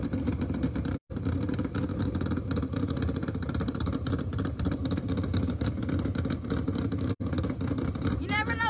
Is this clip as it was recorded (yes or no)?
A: no